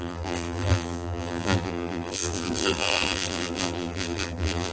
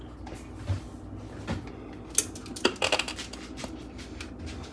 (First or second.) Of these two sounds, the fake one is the first